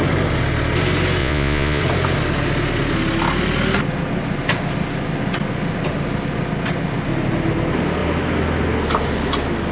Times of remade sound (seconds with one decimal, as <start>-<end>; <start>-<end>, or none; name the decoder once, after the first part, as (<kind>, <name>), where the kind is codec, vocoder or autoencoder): 1.2-1.8 (vocoder, Vocos)